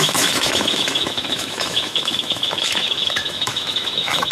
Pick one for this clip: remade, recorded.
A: remade